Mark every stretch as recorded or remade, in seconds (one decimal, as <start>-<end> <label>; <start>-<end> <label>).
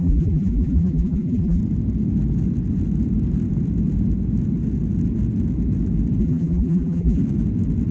0.0-1.6 remade; 1.6-6.2 recorded; 6.2-7.2 remade; 7.2-7.9 recorded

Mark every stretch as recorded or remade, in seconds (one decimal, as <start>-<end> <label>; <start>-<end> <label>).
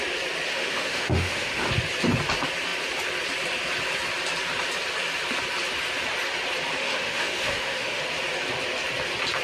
0.0-0.5 recorded; 0.5-1.7 remade; 1.7-6.8 recorded; 6.8-8.0 remade; 8.0-9.4 recorded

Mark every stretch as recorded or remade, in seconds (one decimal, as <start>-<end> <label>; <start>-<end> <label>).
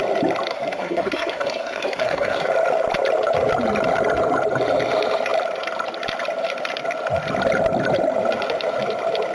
0.0-0.5 recorded; 0.5-2.5 remade; 2.5-9.3 recorded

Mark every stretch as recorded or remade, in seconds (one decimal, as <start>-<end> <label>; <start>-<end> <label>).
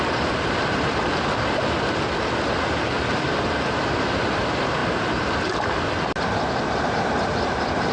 0.0-7.9 recorded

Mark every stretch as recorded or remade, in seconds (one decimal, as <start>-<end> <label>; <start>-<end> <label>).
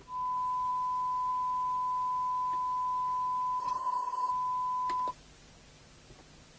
0.0-3.6 recorded; 3.6-4.3 remade; 4.3-6.6 recorded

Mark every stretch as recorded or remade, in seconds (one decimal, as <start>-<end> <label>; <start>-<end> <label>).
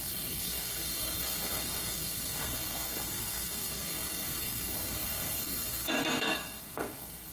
0.0-7.3 remade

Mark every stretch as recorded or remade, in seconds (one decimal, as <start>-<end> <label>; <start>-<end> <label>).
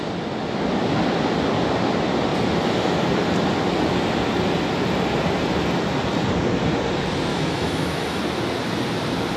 0.0-7.3 recorded; 7.3-8.2 remade; 8.2-9.4 recorded